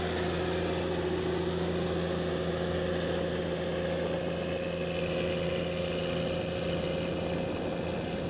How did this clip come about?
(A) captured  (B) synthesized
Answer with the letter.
A